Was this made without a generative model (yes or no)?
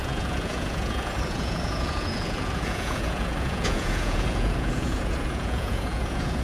no